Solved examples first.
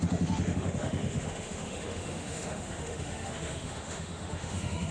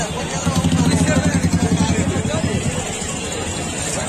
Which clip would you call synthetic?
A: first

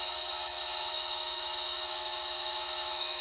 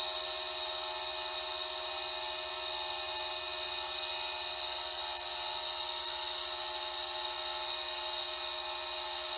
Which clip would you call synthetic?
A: first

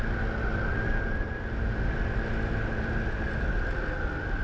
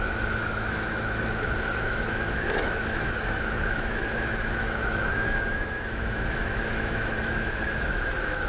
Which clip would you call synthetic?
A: second